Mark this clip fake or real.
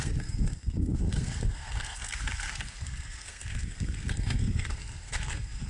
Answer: fake